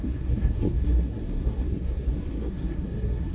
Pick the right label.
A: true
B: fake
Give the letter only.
B